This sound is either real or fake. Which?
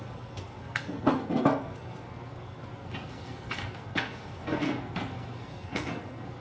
fake